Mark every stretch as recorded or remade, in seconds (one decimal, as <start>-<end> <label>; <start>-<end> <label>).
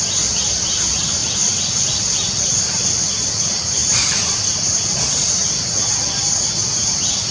0.0-1.2 recorded; 1.2-3.1 remade; 3.1-7.3 recorded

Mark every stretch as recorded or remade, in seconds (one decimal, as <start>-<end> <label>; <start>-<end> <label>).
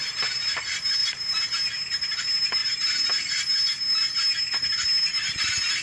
0.0-1.0 recorded; 1.0-1.5 remade; 1.5-5.8 recorded